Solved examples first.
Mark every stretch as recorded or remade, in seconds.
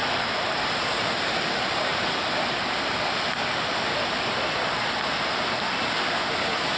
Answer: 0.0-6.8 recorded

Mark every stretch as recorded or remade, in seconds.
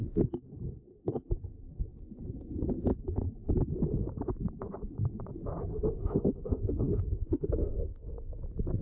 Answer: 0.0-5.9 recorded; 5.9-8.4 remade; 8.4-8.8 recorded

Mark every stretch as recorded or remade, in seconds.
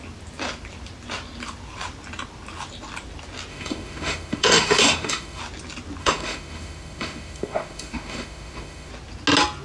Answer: 0.0-3.5 recorded; 3.5-5.4 remade; 5.4-6.0 recorded; 6.0-8.9 remade; 8.9-9.6 recorded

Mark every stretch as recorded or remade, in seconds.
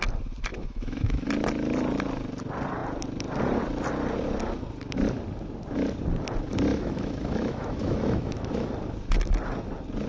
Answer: 0.0-0.5 recorded; 0.5-1.3 remade; 1.3-6.7 recorded; 6.7-8.7 remade; 8.7-10.1 recorded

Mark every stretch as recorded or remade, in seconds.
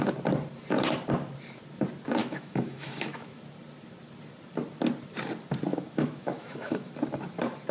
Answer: 0.0-2.2 recorded; 2.2-3.4 remade; 3.4-5.7 recorded; 5.7-6.9 remade; 6.9-7.7 recorded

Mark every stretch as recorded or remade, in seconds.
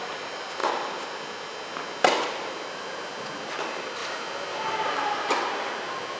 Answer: 0.0-6.2 recorded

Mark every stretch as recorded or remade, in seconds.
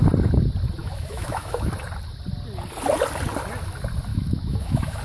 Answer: 0.0-0.8 recorded; 0.8-1.7 remade; 1.7-4.1 recorded; 4.1-5.0 remade